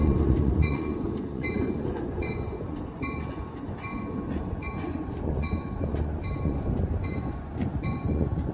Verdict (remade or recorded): remade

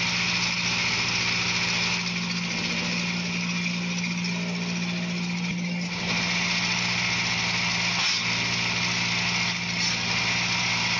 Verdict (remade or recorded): recorded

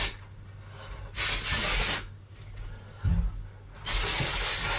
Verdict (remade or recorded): recorded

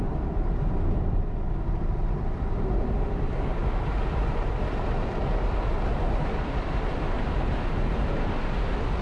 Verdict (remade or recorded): remade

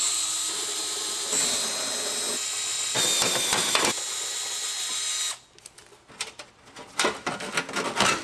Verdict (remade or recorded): recorded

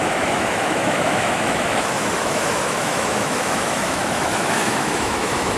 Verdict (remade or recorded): remade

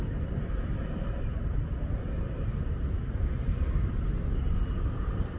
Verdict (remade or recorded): remade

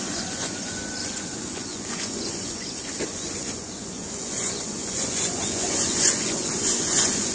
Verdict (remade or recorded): remade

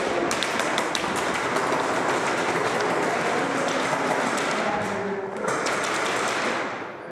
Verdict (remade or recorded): recorded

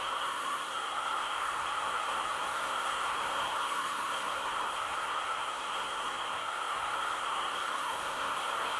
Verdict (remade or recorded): remade